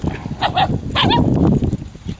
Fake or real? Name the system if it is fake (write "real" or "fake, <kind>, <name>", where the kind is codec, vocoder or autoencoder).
real